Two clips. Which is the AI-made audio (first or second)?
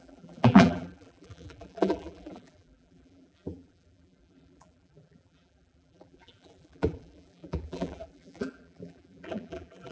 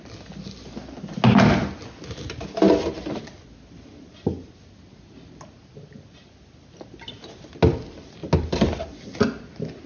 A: first